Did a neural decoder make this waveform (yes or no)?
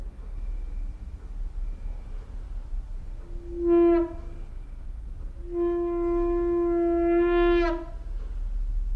no